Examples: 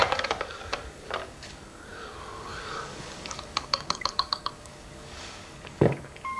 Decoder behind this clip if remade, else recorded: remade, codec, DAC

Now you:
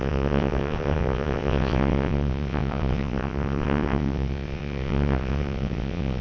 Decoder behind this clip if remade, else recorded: remade, vocoder, WaveNeXt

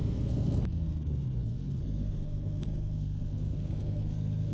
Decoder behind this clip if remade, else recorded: remade, codec, SNAC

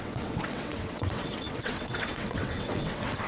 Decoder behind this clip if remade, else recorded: remade, vocoder, WaveNeXt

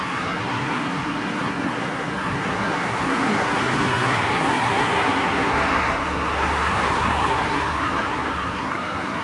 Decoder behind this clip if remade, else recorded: remade, codec, SNAC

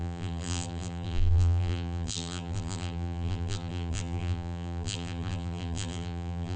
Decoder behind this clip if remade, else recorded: remade, vocoder, BigVGAN v2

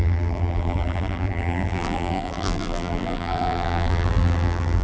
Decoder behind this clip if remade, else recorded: remade, vocoder, BigVGAN v2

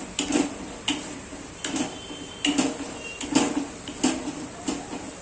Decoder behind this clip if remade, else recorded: recorded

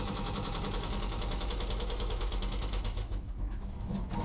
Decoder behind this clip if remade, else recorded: remade, autoencoder, DAC-VAE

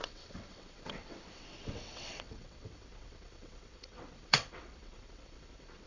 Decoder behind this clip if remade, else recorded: remade, vocoder, WaveNeXt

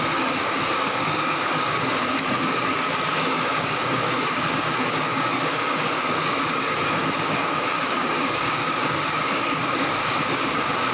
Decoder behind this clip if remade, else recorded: remade, codec, DAC